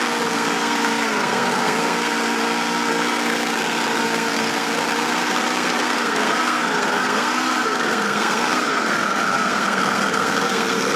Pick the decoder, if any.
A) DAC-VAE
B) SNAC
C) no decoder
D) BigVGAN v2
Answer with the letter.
B